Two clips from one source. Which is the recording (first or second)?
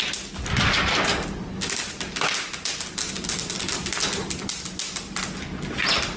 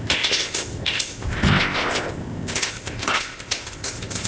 first